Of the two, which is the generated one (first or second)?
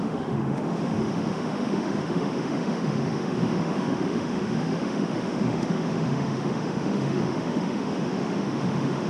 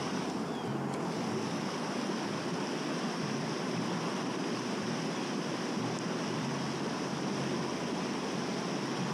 first